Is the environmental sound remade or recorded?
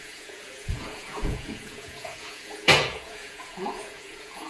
remade